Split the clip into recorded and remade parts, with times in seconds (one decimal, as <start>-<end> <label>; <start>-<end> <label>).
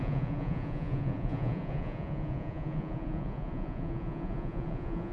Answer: 0.0-5.1 remade